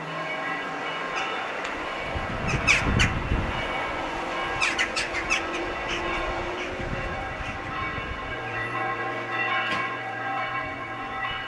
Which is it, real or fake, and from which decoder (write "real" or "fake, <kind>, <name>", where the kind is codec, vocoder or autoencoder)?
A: fake, vocoder, Vocos